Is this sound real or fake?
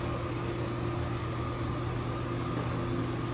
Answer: real